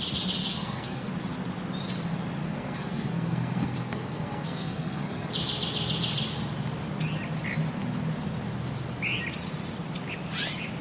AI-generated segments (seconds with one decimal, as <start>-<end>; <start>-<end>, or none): 0.4-1.1; 2.4-5.3